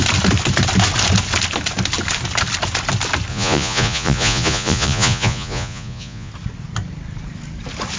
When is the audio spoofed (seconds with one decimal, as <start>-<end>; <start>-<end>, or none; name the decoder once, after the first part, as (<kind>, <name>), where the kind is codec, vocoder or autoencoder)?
3.3-6.3 (vocoder, Vocos)